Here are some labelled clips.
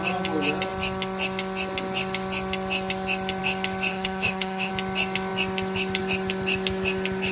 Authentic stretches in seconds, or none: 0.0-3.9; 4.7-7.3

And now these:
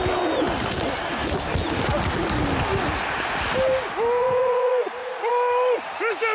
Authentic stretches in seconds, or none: 0.0-4.2; 5.3-6.3

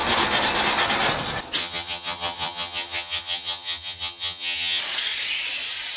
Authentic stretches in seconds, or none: 0.0-1.6; 4.8-6.0